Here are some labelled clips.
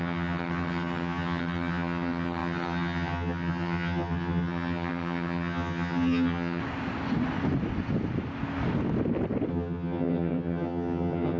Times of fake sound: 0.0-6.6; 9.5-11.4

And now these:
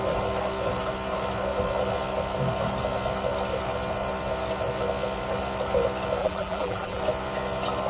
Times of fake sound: 6.2-7.0

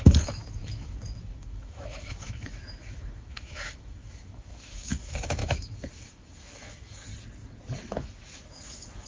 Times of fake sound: 0.0-7.1; 7.9-9.1

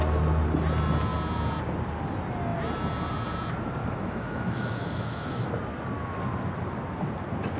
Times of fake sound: 3.8-5.5